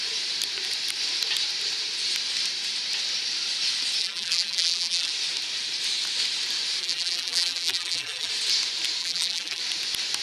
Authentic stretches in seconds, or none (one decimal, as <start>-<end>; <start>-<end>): 0.0-4.0; 5.1-6.8; 8.3-9.0; 9.6-10.2